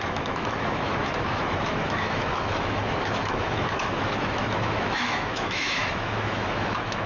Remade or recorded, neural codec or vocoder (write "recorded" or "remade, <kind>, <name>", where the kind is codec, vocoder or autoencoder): remade, autoencoder, DAC-VAE